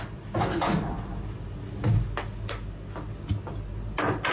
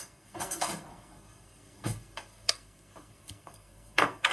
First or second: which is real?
first